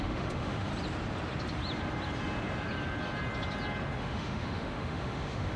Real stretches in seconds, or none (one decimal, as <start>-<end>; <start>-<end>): 0.7-4.0

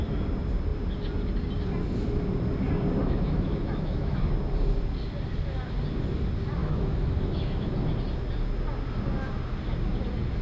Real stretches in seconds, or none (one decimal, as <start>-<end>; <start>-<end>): 0.0-3.0; 4.2-6.6; 7.7-10.4

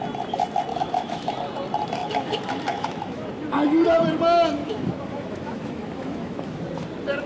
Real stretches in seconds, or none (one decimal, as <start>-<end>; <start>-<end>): 0.0-0.7; 1.3-2.0; 3.3-4.6; 6.6-7.3

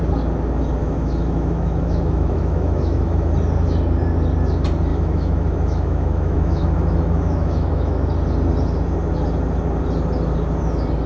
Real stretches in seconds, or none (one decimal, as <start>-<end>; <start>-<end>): 0.0-0.8; 3.3-4.9; 8.1-11.1

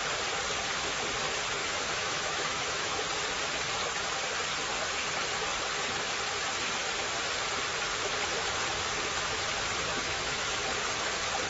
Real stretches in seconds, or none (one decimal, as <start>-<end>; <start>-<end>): 0.0-1.6; 3.0-9.9; 10.5-11.5

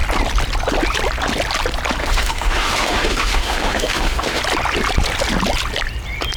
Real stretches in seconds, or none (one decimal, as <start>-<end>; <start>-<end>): 0.0-2.0; 4.4-6.4

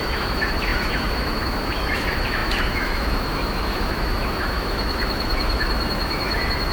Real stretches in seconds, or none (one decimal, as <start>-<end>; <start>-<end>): none

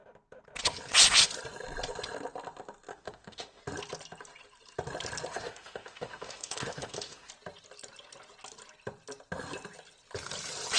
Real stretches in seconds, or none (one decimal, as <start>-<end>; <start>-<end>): 0.0-2.9; 3.6-5.3; 7.3-10.8